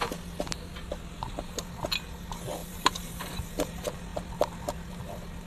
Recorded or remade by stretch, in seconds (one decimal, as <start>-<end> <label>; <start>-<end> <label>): 0.0-2.6 recorded; 2.6-3.5 remade; 3.5-5.5 recorded